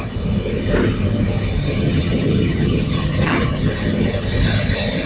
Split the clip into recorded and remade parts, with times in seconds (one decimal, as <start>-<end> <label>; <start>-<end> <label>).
0.0-1.6 recorded; 1.6-3.7 remade; 3.7-5.1 recorded